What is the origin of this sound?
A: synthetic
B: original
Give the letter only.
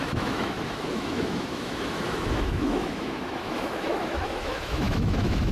A